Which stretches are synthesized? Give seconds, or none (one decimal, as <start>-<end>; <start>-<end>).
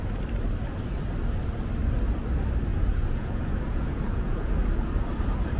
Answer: 2.7-4.5